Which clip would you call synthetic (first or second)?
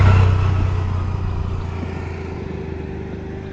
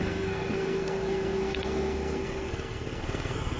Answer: second